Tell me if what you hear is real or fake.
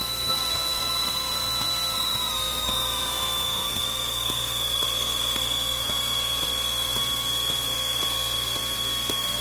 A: fake